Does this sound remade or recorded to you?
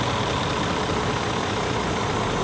recorded